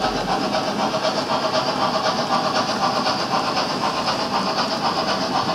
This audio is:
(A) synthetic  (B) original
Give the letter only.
B